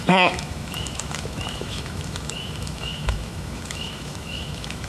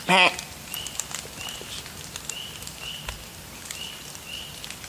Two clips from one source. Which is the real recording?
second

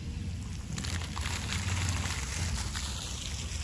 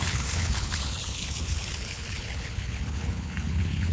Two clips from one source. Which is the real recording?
first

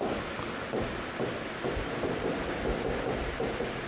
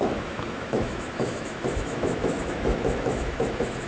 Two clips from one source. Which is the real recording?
first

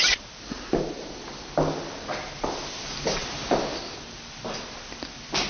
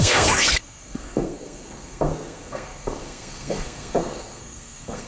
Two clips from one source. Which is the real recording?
first